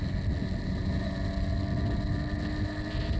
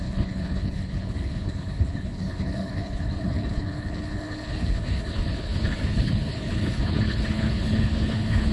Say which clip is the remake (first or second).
second